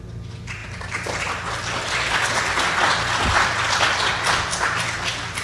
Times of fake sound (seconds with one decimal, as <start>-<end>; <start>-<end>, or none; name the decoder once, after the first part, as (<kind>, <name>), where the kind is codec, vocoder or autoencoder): none